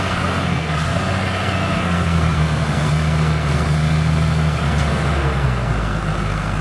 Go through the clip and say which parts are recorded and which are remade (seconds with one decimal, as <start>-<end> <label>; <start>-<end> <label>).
0.0-6.6 remade